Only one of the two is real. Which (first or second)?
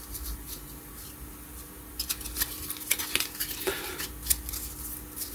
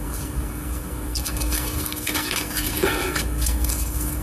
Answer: first